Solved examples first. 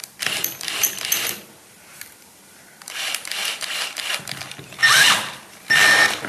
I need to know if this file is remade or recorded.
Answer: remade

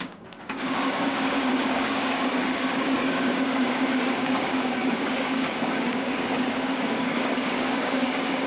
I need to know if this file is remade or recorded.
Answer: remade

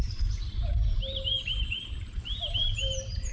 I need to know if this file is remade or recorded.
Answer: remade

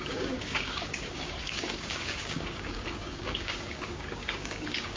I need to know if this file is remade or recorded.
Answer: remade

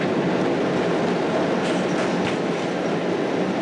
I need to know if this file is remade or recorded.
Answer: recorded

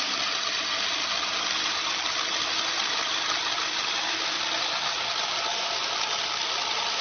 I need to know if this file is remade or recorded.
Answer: recorded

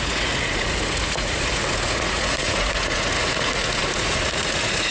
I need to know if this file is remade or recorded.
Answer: remade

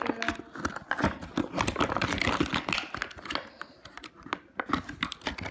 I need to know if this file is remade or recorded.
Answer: recorded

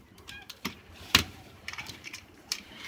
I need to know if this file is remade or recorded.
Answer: remade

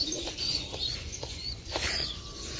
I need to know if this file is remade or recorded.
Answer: remade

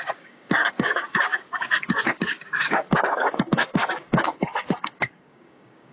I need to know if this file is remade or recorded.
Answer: remade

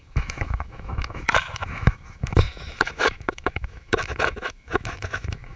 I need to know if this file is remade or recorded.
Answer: remade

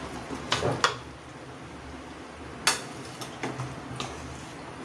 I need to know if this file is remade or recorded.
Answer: recorded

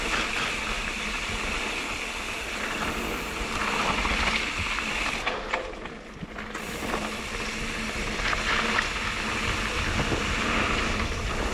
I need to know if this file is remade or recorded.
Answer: recorded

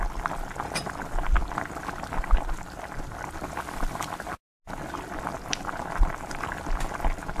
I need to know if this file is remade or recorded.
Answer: recorded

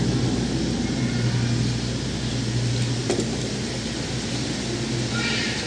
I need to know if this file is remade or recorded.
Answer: recorded